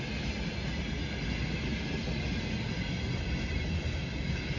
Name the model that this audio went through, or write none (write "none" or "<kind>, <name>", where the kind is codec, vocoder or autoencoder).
none